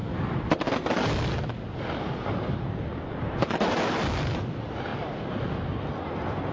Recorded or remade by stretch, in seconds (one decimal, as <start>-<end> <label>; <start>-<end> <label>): 0.0-6.5 recorded